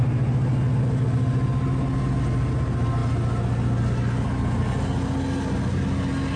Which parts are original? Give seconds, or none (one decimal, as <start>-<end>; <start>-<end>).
0.0-6.4